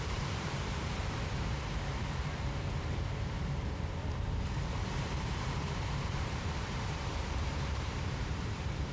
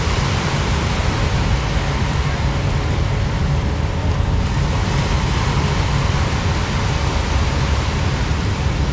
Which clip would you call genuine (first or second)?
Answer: second